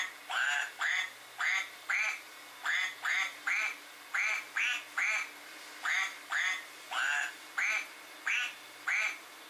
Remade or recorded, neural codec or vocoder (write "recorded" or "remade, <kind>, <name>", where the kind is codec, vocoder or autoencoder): recorded